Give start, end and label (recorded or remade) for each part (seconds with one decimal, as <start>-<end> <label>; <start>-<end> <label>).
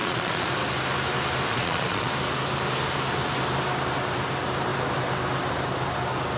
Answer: 0.0-0.5 remade; 0.5-1.5 recorded; 1.5-2.1 remade; 2.1-6.4 recorded